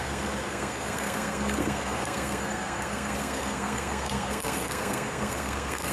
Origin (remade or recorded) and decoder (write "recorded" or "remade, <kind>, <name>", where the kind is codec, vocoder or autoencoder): remade, codec, SNAC